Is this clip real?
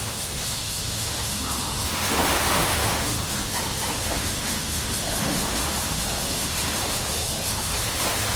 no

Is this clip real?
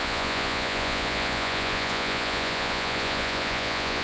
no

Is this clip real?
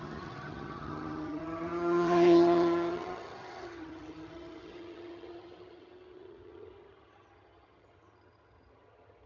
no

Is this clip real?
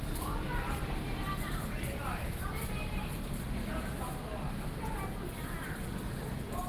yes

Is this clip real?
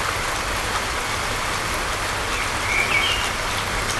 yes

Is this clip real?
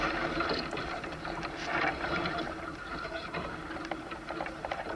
no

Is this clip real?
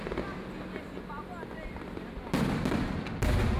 yes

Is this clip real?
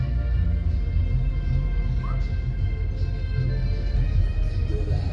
yes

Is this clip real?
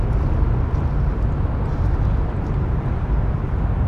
yes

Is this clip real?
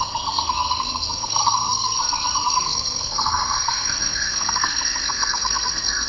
no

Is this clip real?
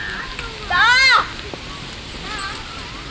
yes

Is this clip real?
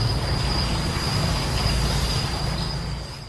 yes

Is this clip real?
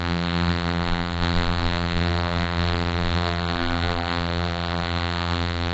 no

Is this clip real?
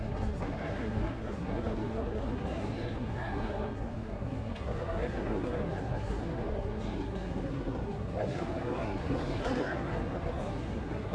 no